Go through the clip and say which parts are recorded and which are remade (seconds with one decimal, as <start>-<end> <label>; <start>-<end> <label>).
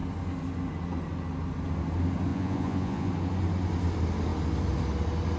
0.0-2.3 recorded; 2.3-3.1 remade; 3.1-5.4 recorded